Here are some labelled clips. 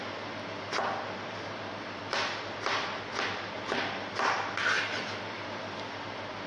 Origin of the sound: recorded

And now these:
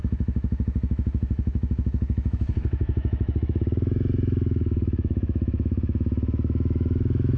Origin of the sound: remade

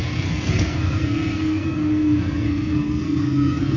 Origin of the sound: remade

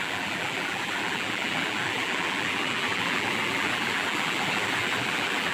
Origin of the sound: remade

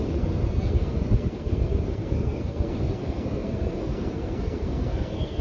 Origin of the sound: remade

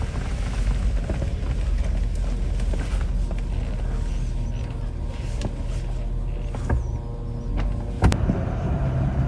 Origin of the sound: recorded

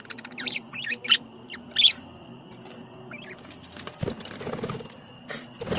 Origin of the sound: recorded